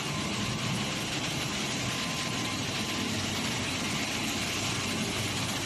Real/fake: real